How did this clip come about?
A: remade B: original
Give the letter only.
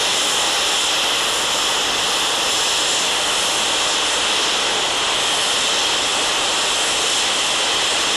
B